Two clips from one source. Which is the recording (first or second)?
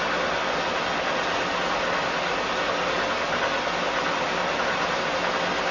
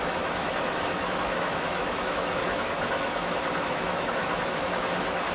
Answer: first